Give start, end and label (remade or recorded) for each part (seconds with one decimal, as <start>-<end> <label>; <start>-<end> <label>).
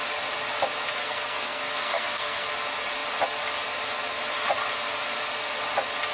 0.0-1.0 recorded; 1.0-2.5 remade; 2.5-6.1 recorded